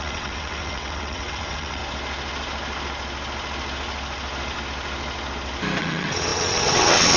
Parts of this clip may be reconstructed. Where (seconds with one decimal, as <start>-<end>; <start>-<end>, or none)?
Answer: 0.0-1.8; 5.8-7.2